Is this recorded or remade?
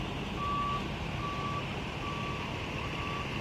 recorded